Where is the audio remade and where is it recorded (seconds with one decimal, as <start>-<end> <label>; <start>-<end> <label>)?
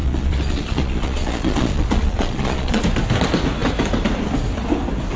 0.0-2.8 remade; 2.8-5.2 recorded